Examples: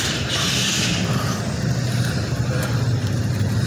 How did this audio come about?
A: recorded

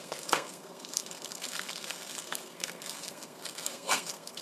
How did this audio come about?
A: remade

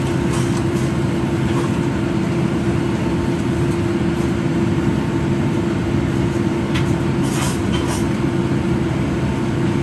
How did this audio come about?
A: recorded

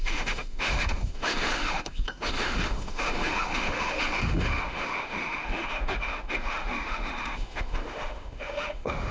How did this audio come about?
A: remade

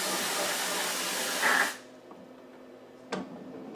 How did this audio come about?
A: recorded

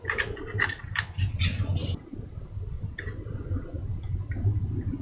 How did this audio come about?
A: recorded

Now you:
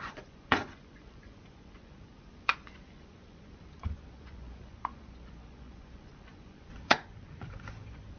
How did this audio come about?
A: remade